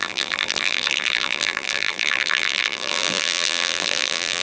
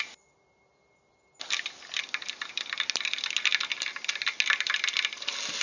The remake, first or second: first